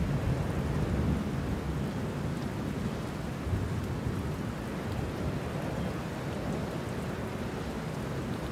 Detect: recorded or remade recorded